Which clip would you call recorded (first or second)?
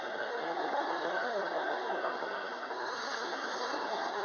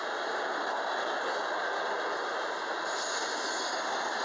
second